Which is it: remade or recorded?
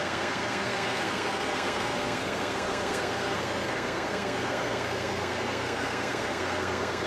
remade